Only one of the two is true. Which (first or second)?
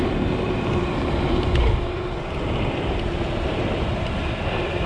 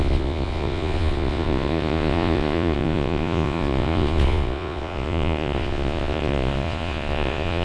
first